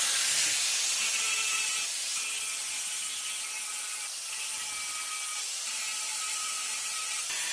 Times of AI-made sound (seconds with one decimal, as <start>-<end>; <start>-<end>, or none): 5.3-7.5